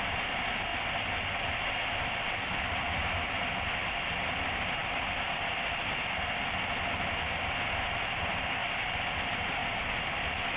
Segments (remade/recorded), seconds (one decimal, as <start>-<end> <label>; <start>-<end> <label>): 0.0-10.6 recorded